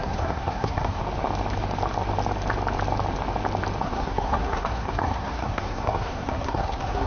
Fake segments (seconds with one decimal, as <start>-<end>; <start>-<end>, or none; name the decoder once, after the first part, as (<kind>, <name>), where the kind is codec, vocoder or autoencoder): 0.0-1.0 (codec, SNAC); 3.8-7.1

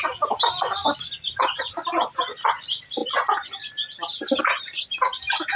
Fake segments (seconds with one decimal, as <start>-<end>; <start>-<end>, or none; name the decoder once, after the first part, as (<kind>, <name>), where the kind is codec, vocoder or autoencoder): 0.0-0.8 (vocoder, BigVGAN v2); 1.3-1.8; 2.5-3.0; 4.4-5.6

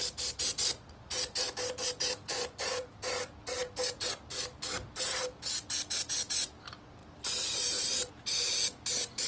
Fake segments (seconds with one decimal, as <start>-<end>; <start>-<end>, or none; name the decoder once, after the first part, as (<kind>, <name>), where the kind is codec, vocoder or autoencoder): 2.3-2.9 (vocoder, Vocos)

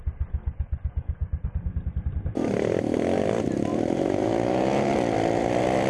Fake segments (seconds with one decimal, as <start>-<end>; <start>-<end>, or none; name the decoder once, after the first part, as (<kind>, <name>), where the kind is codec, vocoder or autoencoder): 1.2-2.8 (vocoder, BigVGAN v2); 3.7-4.3

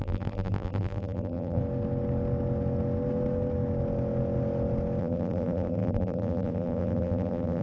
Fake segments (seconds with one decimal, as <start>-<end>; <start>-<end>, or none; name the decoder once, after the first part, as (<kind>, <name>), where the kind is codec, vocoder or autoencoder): 0.0-1.6 (vocoder, BigVGAN v2); 5.0-7.6

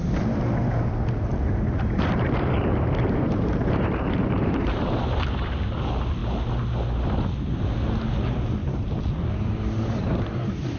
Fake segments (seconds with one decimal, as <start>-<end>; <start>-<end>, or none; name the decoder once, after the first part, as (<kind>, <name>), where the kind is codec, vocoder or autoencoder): 1.3-5.2 (vocoder, BigVGAN v2); 8.6-10.8